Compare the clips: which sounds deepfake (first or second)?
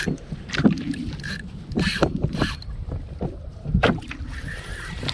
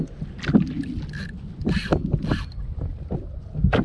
first